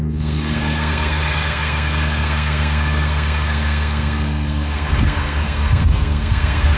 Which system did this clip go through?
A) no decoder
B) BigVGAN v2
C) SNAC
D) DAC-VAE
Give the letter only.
C